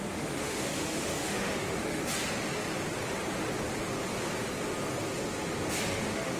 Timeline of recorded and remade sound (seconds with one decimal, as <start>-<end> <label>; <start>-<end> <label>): 0.0-2.0 remade; 2.0-5.8 recorded; 5.8-6.4 remade